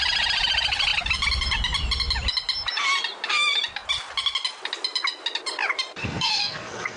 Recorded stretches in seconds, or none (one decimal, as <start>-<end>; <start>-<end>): 0.0-6.0

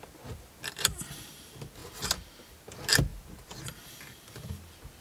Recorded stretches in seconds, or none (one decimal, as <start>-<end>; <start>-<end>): 0.0-5.0

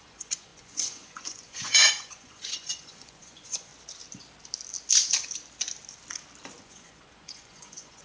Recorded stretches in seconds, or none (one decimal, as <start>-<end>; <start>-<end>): 3.7-6.6

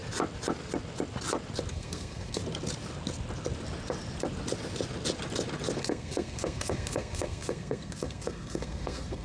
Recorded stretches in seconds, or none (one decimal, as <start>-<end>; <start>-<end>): 0.0-1.7; 2.4-5.8